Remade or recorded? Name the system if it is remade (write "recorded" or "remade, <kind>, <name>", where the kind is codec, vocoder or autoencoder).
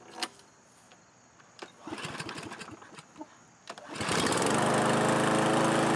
recorded